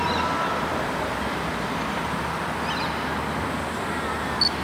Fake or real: real